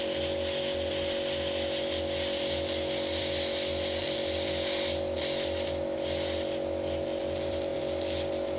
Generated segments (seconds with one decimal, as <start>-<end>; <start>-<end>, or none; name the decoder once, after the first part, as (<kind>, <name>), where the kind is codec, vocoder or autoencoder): none